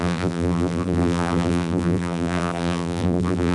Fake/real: fake